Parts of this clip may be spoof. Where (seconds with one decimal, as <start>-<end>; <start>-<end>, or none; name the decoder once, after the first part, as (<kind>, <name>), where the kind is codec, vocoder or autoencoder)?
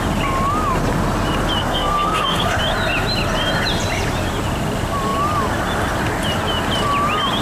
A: 1.6-2.6 (codec, SNAC)